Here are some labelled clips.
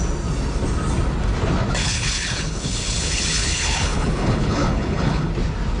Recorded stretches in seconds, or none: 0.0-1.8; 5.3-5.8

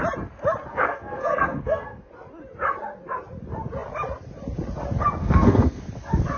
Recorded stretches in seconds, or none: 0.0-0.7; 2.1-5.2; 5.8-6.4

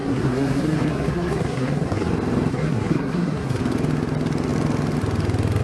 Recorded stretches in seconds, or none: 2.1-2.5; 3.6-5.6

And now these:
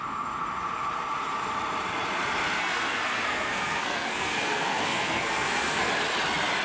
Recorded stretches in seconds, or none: 0.0-2.6; 5.9-6.6

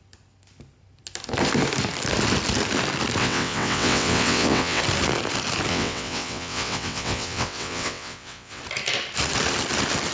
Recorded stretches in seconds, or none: 0.0-3.2; 4.8-5.7; 8.6-10.1

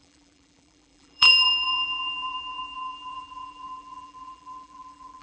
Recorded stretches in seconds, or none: none